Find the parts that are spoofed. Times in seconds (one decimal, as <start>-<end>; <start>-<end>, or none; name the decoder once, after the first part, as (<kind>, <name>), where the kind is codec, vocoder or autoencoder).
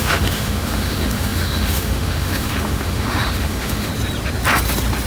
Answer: 0.0-3.9 (autoencoder, DAC-VAE)